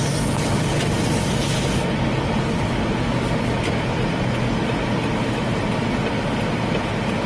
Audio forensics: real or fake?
real